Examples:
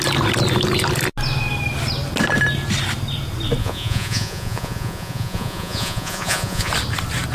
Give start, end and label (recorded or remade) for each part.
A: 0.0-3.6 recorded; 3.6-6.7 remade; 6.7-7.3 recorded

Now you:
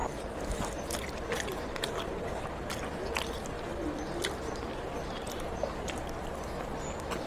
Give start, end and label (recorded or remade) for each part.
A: 0.0-2.1 remade; 2.1-3.7 recorded; 3.7-6.0 remade; 6.0-7.3 recorded

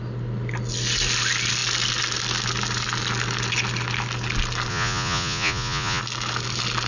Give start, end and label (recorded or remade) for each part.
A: 0.0-4.7 recorded; 4.7-6.0 remade; 6.0-6.9 recorded